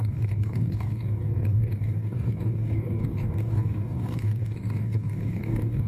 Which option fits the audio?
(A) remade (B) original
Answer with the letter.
A